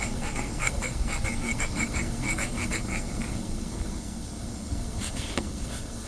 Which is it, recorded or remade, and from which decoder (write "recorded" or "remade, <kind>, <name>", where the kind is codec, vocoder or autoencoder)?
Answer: remade, codec, SNAC